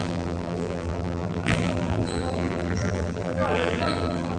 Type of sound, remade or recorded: remade